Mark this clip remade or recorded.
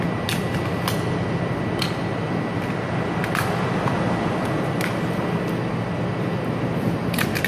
recorded